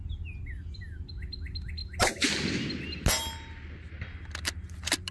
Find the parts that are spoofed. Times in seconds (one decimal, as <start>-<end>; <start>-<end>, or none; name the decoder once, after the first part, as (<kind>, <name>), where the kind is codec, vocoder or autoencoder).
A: none